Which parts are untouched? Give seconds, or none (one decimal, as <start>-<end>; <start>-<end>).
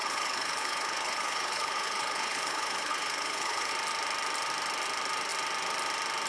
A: 3.7-6.3